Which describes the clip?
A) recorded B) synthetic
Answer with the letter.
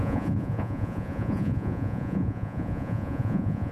B